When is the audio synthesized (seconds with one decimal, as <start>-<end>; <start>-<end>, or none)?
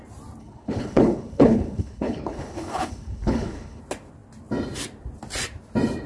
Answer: 0.4-3.8